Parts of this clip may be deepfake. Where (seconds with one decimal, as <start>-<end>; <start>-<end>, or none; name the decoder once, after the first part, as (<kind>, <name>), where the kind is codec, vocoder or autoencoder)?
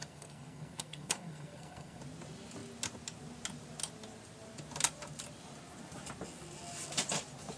0.0-2.0 (codec, SNAC)